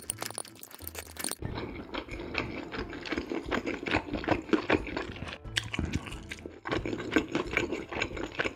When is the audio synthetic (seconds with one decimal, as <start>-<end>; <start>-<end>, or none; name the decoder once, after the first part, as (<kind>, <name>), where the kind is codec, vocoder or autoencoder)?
0.4-1.8 (vocoder, BigVGAN v2); 3.1-4.4; 7.2-8.6